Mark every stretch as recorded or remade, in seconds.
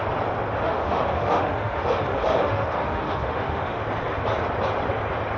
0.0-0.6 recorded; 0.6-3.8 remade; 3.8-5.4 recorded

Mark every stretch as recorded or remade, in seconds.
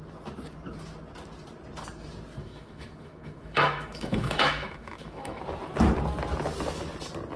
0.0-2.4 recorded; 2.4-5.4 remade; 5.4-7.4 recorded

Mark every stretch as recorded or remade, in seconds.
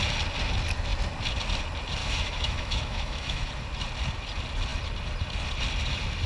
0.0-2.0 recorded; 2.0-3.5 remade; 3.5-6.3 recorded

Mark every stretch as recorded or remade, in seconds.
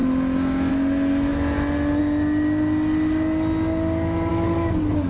0.0-4.3 recorded; 4.3-5.1 remade